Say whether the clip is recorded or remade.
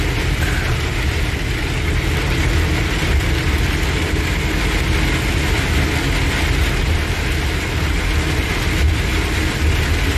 recorded